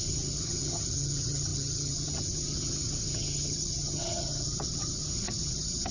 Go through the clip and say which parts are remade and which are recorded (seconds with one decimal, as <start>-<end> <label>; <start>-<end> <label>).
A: 0.0-5.9 remade